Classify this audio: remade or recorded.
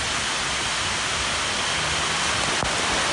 recorded